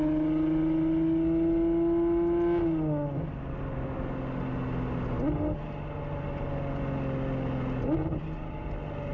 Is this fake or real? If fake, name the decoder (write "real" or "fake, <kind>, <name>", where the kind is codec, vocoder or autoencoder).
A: real